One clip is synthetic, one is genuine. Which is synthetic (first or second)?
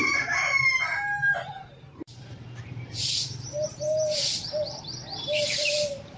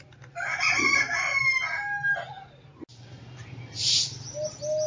first